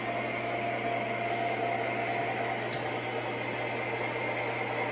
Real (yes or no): yes